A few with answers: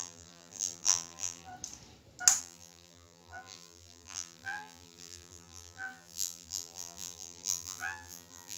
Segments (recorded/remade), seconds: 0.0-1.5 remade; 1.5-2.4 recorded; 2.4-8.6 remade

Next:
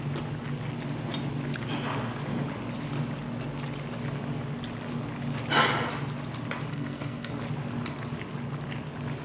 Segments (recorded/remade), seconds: 0.0-6.7 recorded; 6.7-7.3 remade; 7.3-9.2 recorded